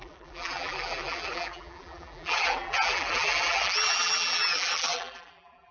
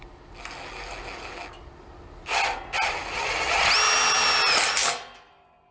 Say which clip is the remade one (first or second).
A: first